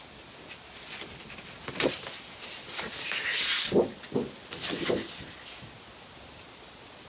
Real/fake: real